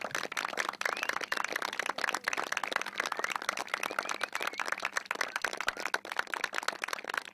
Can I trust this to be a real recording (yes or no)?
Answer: yes